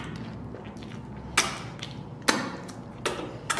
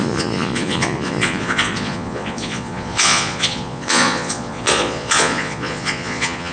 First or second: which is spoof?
second